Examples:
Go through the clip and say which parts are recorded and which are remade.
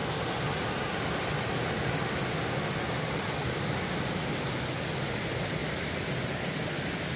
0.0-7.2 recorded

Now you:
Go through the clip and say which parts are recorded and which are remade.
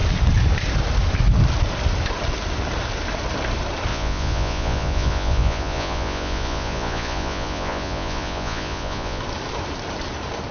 0.0-3.9 recorded; 3.9-9.2 remade; 9.2-10.5 recorded